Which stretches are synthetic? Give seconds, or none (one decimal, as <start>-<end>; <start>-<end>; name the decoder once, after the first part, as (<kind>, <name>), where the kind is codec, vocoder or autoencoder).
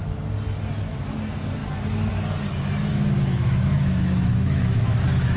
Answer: 2.9-5.0 (autoencoder, DAC-VAE)